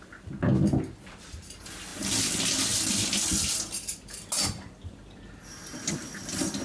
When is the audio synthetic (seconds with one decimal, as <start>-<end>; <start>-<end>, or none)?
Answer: none